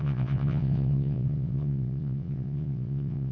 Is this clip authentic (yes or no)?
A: no